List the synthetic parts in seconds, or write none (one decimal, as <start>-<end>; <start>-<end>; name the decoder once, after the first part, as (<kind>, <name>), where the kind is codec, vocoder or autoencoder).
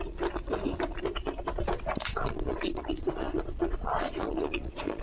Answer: 2.1-5.0 (vocoder, Vocos)